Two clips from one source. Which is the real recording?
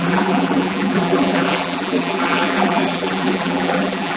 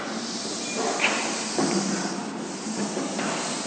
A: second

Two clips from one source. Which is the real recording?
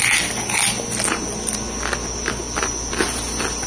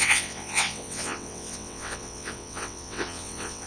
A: first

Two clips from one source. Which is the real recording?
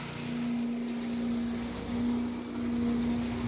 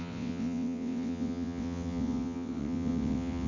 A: first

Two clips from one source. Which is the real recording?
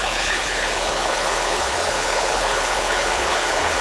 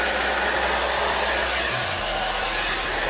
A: second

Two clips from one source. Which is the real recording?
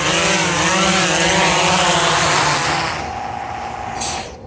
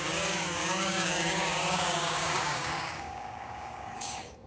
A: first